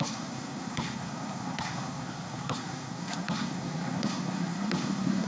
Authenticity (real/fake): fake